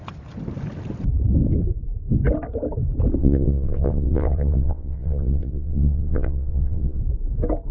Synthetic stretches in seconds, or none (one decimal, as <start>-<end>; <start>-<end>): 3.2-7.0

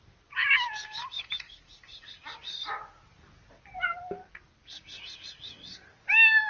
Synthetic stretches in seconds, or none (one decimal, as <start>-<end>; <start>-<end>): none

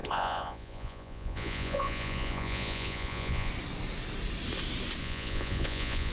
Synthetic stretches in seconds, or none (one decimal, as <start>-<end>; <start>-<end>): 0.0-3.5; 5.0-6.1

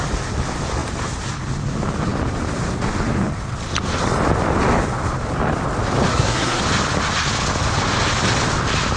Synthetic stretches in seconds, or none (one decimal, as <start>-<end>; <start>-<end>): 6.1-6.6

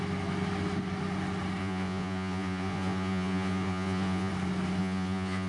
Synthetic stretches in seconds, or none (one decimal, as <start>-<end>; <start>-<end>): 1.6-4.3; 4.8-5.5